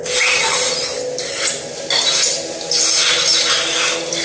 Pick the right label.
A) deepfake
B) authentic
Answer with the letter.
B